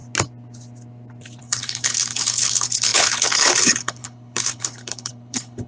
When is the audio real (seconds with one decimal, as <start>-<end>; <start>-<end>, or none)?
0.0-1.4